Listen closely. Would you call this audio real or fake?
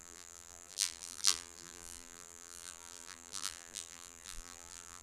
fake